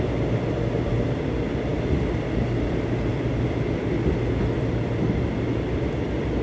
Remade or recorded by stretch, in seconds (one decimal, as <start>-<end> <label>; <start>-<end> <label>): 0.0-6.4 recorded